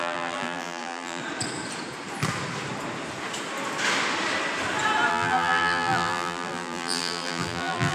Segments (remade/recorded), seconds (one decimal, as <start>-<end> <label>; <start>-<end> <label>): 0.0-1.2 remade; 1.2-5.1 recorded; 5.1-7.9 remade